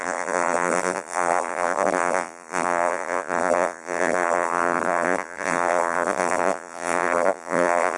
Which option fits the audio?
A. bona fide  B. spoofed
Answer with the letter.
B